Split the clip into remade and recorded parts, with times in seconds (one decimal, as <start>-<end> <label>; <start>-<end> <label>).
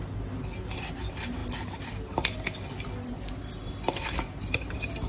0.0-5.1 recorded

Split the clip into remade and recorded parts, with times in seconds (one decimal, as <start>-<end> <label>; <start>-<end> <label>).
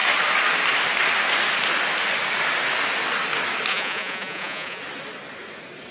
0.0-3.7 recorded; 3.7-4.8 remade; 4.8-5.9 recorded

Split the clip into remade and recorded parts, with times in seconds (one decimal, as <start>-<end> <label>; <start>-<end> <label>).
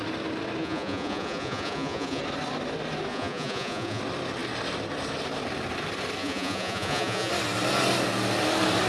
0.0-0.6 recorded; 0.6-2.2 remade; 2.2-3.1 recorded; 3.1-4.0 remade; 4.0-6.2 recorded; 6.2-7.3 remade; 7.3-8.9 recorded